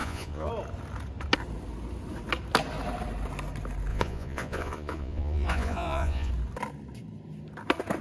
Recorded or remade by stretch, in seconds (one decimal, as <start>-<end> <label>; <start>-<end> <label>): 0.0-0.5 remade; 0.5-3.9 recorded; 3.9-6.3 remade; 6.3-8.0 recorded